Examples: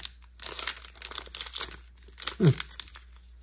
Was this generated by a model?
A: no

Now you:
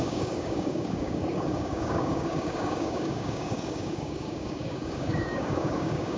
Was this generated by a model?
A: yes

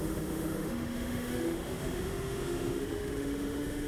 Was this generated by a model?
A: yes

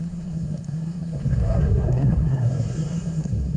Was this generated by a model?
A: yes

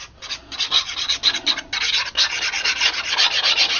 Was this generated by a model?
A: no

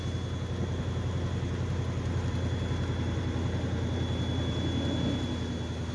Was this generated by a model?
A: no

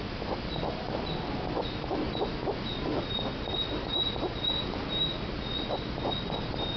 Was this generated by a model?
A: no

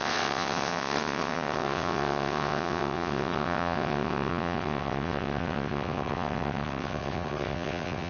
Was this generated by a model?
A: yes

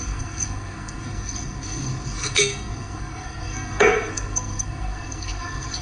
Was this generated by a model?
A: yes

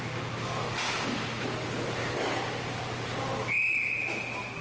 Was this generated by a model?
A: no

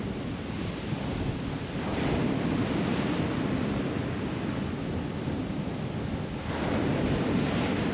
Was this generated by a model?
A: no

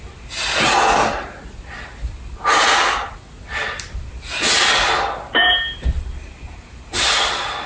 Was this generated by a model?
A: no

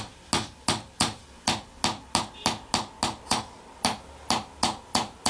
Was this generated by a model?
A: no